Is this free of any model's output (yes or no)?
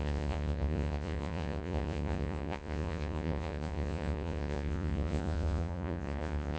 no